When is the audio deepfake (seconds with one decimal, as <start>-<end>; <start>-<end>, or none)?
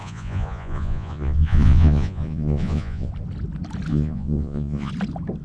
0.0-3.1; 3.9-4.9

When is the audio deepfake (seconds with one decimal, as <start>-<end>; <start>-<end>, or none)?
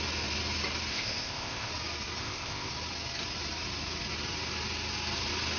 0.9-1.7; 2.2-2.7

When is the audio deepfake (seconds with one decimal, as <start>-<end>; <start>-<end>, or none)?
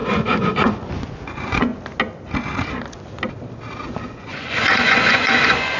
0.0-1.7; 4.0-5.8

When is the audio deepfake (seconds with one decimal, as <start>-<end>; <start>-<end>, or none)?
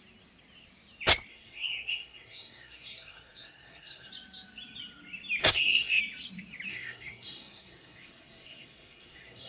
1.3-4.1; 5.4-6.0; 6.7-9.5